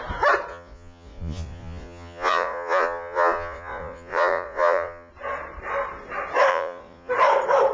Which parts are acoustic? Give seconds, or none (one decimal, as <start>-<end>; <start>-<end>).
0.0-0.5; 5.1-6.5; 7.1-7.7